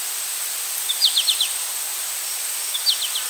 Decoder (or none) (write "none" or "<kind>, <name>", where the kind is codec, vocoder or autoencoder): none